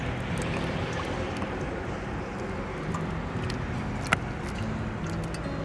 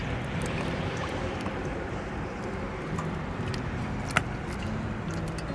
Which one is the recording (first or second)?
first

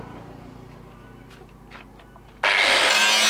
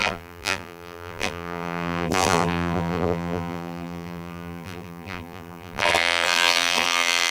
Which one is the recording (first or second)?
first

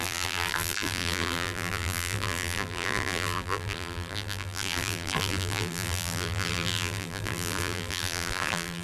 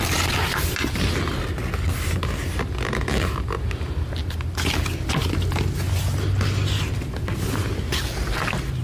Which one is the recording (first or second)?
second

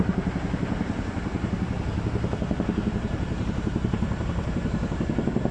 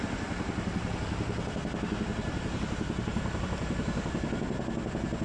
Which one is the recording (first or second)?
second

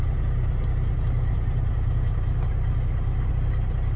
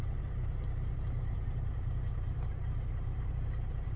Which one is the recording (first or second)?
first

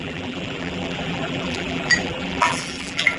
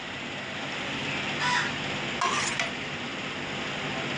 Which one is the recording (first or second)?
second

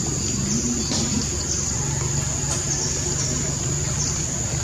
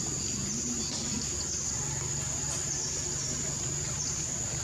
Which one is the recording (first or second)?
second